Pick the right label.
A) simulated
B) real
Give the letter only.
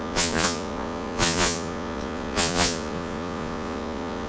A